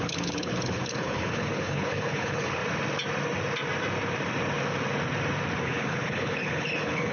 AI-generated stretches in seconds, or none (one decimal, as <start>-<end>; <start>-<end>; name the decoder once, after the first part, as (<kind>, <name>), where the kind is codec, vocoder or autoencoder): 0.0-2.6 (codec, HILCodec); 5.6-7.1